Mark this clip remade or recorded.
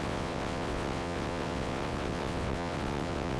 remade